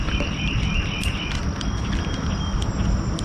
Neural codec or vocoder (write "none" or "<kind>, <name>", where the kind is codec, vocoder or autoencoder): none